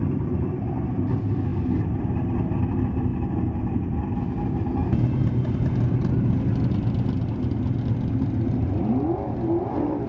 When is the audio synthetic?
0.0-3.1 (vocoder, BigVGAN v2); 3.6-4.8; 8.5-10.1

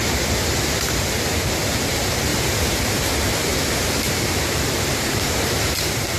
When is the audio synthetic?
1.9-6.2 (vocoder, BigVGAN v2)

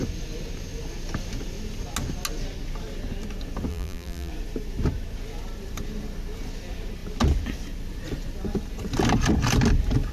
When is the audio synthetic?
3.7-4.3 (vocoder, BigVGAN v2)

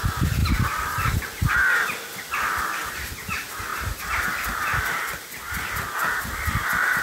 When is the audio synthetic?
0.4-1.5 (vocoder, BigVGAN v2); 3.7-4.6

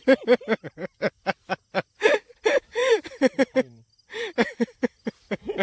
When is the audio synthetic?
2.8-5.1 (vocoder, BigVGAN v2)

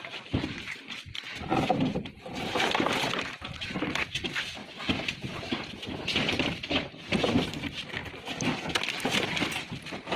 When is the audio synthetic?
1.5-3.7 (vocoder, BigVGAN v2); 4.6-7.6

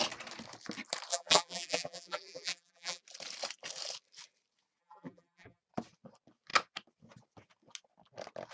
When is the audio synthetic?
1.1-3.0 (vocoder, BigVGAN v2); 4.8-5.6